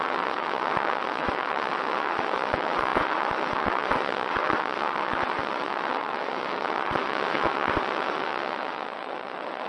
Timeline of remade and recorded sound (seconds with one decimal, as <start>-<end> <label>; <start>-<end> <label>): 0.0-9.7 remade